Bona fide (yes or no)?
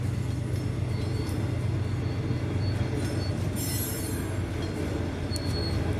yes